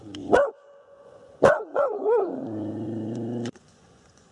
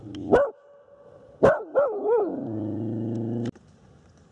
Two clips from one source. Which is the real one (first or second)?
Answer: second